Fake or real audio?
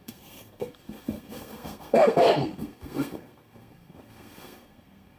fake